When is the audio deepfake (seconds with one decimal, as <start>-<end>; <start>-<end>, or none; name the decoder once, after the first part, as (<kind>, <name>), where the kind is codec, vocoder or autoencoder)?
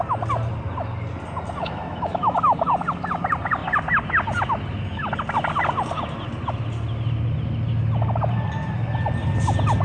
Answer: 1.6-2.7 (autoencoder, DAC-VAE)